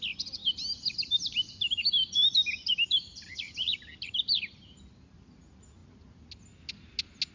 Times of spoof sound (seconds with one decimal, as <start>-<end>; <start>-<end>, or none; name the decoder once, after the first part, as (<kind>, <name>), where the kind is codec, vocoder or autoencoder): 0.4-4.8 (vocoder, BigVGAN v2)